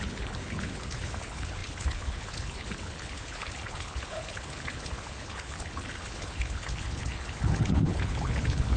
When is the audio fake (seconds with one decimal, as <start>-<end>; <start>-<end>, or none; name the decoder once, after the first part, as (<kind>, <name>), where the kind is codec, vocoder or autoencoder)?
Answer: 0.0-8.8 (codec, HILCodec)